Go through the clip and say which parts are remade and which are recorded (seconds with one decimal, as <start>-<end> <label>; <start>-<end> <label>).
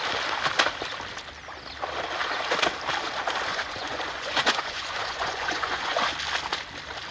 0.0-3.5 recorded; 3.5-6.0 remade; 6.0-7.1 recorded